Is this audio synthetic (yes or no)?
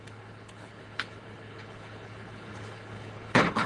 yes